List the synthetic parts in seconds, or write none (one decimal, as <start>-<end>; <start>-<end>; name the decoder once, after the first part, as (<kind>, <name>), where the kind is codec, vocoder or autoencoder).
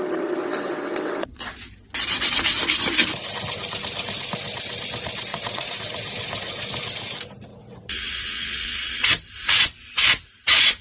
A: 0.4-1.4 (vocoder, WaveNeXt); 5.3-5.8; 7.5-9.0